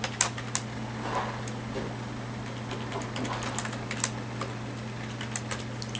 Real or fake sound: real